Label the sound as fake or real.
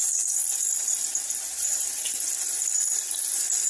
real